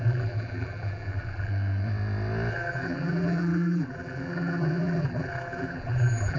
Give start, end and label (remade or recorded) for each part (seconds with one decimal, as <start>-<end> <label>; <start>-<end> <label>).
0.0-1.5 remade; 1.5-2.5 recorded; 2.5-6.4 remade